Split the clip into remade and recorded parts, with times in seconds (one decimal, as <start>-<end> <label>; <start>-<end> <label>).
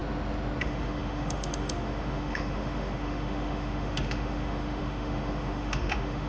0.0-0.6 recorded; 0.6-6.3 remade